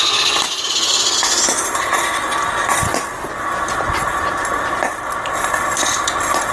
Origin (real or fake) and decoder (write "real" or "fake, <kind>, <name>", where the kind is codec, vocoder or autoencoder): real